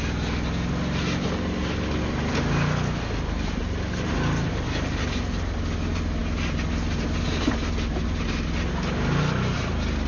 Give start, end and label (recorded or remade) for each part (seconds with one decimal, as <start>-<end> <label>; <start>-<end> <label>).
0.0-10.1 recorded